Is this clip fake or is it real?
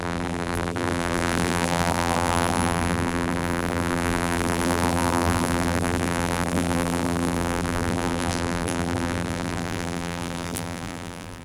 fake